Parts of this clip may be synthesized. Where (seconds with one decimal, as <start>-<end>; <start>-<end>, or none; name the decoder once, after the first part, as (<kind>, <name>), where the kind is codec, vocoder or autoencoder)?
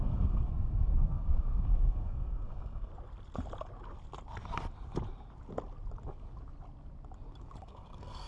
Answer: 0.0-2.9 (codec, SNAC); 7.6-8.3